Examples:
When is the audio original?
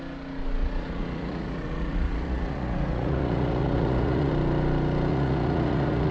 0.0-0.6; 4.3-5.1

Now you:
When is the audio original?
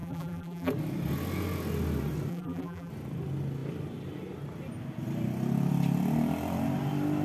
0.7-2.3; 2.9-7.2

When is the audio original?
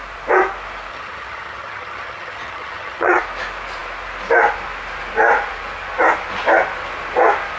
0.0-0.9; 3.2-7.6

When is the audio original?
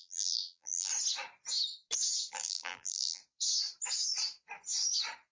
0.9-2.3; 3.2-5.3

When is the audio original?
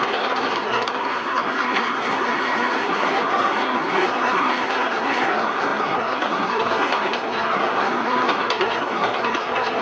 none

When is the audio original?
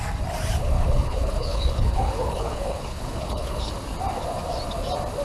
0.0-0.6; 3.7-5.2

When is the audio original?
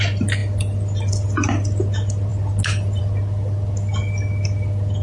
0.0-5.0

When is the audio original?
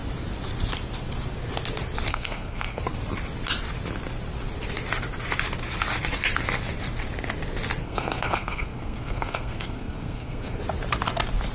0.0-2.1; 2.8-7.8; 10.6-11.5